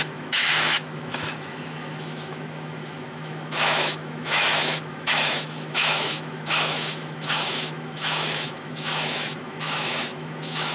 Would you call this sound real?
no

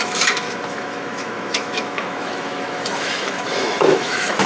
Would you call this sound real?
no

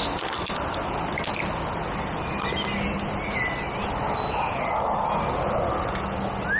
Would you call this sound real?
yes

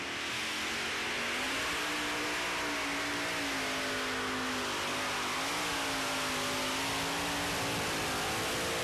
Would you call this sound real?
yes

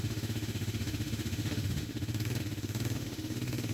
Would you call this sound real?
no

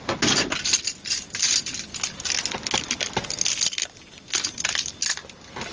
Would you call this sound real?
yes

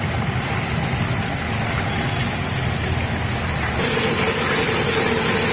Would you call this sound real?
yes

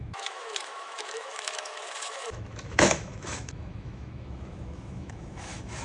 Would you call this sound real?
no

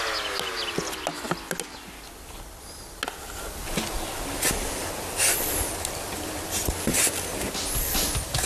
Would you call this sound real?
yes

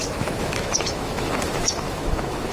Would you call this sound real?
no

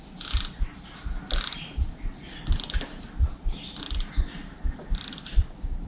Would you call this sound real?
yes